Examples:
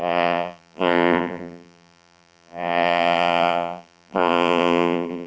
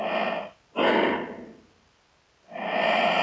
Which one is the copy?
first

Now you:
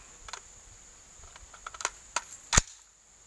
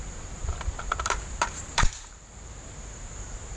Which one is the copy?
second